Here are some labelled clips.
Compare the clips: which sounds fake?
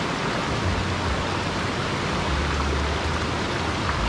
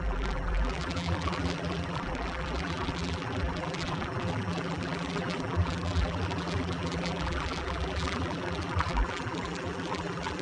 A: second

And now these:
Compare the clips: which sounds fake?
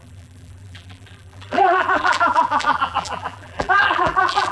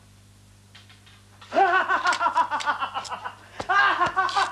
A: first